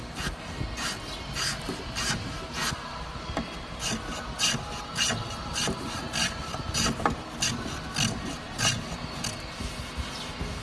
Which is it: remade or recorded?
recorded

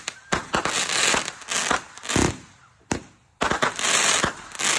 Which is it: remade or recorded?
recorded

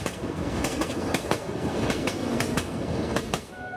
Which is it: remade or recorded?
remade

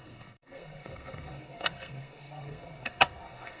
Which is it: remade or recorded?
remade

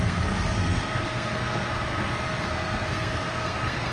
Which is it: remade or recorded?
remade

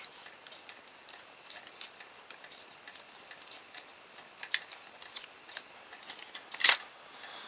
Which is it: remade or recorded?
recorded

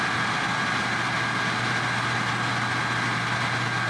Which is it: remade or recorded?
recorded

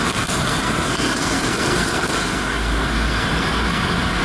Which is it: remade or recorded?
remade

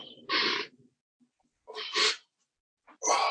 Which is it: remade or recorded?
recorded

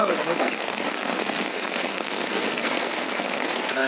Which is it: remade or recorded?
remade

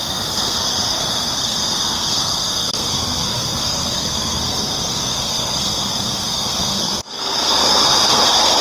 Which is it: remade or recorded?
remade